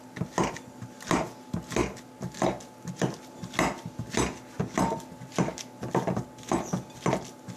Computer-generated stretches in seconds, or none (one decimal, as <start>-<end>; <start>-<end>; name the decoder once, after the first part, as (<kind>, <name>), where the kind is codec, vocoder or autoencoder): none